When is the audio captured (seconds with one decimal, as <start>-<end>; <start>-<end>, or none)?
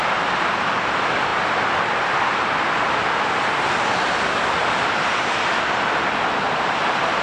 none